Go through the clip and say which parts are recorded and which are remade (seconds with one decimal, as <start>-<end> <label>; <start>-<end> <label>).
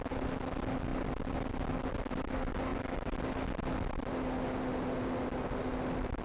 0.0-6.2 recorded